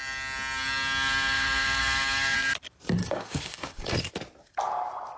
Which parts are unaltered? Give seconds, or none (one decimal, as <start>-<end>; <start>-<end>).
0.0-3.0; 4.0-5.2